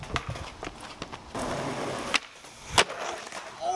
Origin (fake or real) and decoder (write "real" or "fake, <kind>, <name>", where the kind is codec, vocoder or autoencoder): real